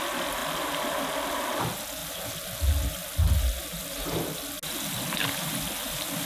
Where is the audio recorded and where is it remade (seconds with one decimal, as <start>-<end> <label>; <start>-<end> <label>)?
0.0-6.2 recorded